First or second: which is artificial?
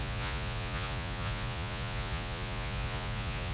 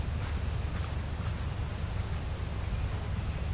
first